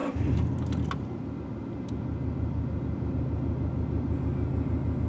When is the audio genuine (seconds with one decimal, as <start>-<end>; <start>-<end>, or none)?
0.0-5.1